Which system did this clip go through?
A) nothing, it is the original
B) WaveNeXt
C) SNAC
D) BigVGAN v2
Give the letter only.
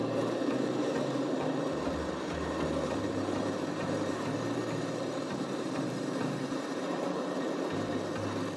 D